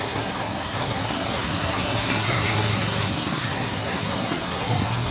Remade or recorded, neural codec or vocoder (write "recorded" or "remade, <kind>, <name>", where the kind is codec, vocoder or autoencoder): remade, codec, SNAC